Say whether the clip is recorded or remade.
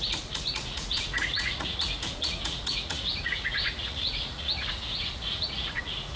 remade